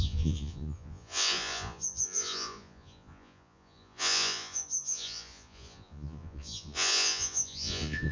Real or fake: fake